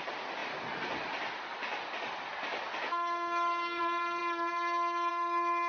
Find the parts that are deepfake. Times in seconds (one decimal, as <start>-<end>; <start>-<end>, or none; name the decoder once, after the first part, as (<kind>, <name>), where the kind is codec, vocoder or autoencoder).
none